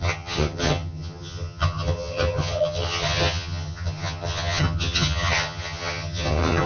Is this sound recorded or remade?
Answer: remade